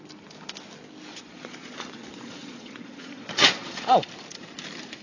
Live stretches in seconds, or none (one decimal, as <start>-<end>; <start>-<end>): 0.0-1.1; 4.1-5.0